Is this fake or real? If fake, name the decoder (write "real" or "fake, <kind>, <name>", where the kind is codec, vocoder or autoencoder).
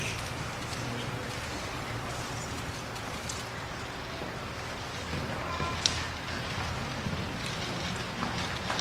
real